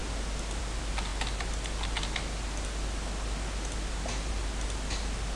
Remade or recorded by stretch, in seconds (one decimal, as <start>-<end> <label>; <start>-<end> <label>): 0.0-5.4 recorded